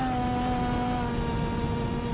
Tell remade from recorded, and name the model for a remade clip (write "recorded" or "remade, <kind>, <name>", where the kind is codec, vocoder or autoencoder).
recorded